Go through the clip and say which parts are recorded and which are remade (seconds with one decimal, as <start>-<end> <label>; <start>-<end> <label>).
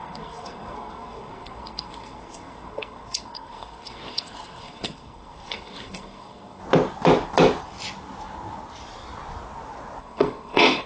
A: 0.0-6.6 remade; 6.6-10.0 recorded; 10.0-10.9 remade